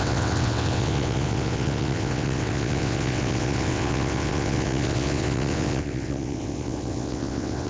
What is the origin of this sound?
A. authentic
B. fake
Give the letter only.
B